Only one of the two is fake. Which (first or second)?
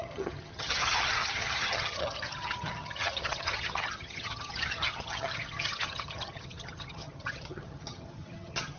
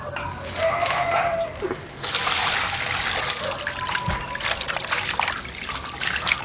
first